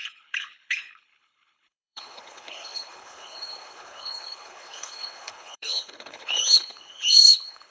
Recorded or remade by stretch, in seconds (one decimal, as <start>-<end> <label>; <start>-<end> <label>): 0.0-7.7 remade